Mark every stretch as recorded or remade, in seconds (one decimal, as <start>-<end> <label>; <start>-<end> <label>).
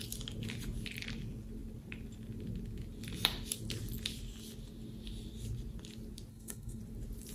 0.0-6.3 recorded; 6.3-6.8 remade; 6.8-7.3 recorded